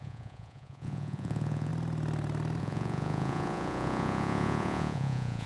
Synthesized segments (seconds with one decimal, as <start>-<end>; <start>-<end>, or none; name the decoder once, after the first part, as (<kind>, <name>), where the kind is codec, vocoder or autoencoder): 0.0-1.7 (vocoder, Vocos); 2.6-5.5